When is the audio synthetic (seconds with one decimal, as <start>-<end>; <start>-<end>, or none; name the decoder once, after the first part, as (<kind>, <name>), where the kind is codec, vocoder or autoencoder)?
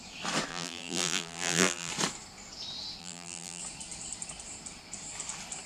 0.5-1.9 (vocoder, BigVGAN v2); 3.0-3.6